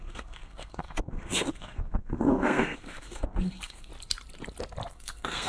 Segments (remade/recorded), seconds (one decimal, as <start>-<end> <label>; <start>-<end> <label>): 0.0-3.9 remade; 3.9-4.9 recorded; 4.9-5.5 remade